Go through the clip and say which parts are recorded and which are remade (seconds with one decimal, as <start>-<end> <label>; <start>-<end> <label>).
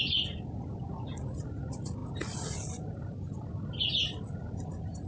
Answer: 0.0-5.1 recorded